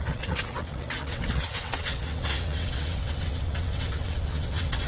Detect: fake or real fake